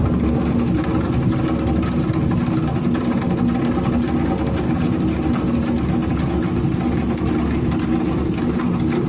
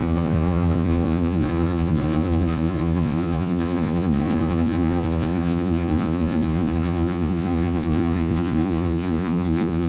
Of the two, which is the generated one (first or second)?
second